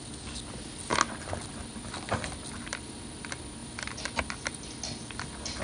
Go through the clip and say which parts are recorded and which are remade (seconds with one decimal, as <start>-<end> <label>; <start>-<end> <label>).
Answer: 0.0-5.6 recorded